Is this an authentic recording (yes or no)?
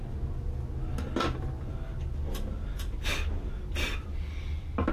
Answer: yes